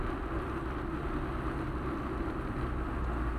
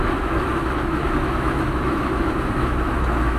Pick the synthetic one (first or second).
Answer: second